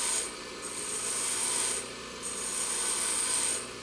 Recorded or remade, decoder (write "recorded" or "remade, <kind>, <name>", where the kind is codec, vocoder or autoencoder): recorded